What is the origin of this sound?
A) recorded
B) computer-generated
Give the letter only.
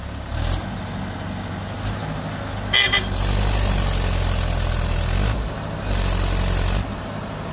A